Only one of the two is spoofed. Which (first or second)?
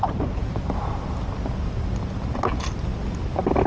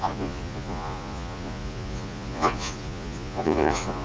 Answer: second